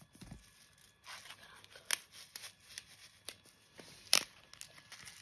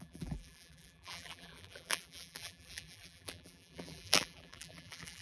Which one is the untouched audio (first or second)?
first